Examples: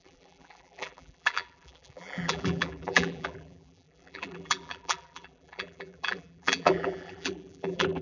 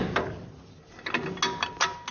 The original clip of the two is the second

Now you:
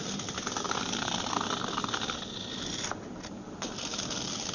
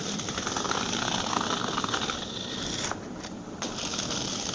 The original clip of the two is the first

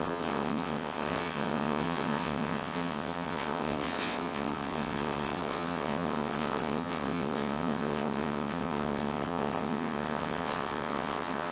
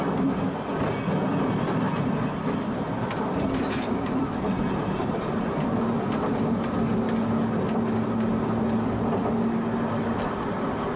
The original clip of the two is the second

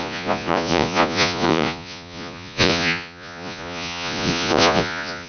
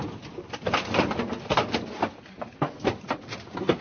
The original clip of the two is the second